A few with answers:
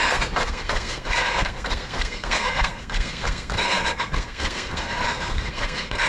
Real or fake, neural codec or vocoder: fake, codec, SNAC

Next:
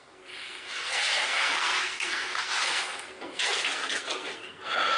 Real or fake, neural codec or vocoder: fake, codec, SNAC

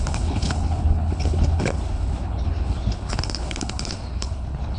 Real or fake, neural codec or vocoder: fake, codec, HILCodec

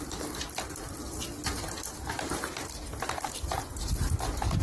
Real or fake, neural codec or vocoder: fake, vocoder, BigVGAN v2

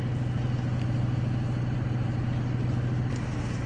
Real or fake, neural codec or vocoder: real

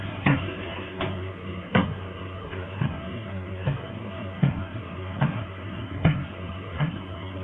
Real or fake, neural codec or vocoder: fake, codec, SNAC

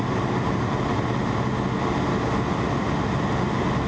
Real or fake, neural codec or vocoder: real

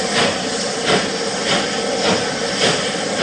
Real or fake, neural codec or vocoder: real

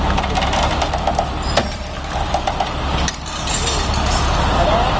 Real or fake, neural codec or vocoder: real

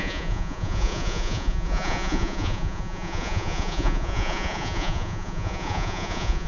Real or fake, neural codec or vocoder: fake, vocoder, Vocos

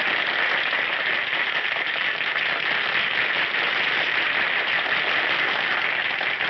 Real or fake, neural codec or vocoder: real